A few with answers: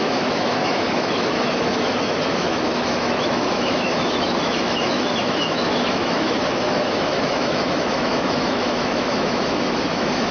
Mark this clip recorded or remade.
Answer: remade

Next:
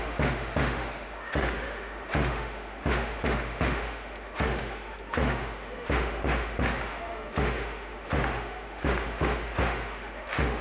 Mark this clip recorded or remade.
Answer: remade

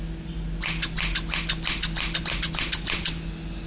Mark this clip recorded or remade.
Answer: recorded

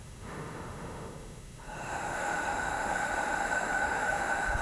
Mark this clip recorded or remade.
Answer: remade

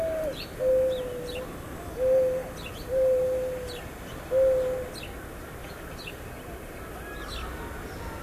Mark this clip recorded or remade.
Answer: recorded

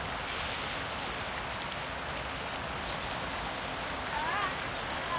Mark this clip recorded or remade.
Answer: recorded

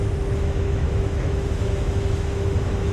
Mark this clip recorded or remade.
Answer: remade